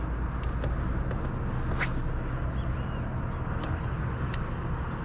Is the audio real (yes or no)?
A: yes